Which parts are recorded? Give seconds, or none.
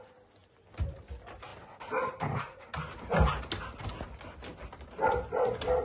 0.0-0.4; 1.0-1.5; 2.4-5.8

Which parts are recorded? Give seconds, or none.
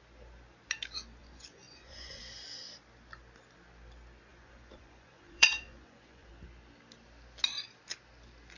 0.0-1.2; 2.2-4.3; 6.3-8.6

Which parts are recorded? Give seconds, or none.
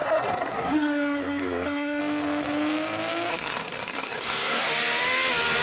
2.0-3.3; 4.7-5.6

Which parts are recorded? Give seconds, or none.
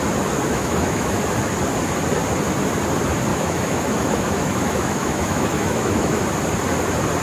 0.0-0.5; 1.2-3.3; 6.2-7.2